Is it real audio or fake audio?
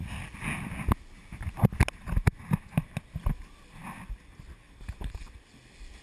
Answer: real